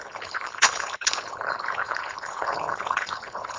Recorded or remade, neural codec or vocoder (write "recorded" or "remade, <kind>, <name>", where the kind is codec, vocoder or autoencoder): remade, codec, HILCodec